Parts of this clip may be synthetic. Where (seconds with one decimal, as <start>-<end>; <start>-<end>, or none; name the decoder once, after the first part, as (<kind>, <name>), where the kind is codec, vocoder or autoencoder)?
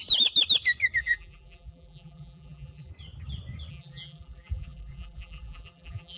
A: 1.0-2.9 (vocoder, BigVGAN v2); 3.7-6.2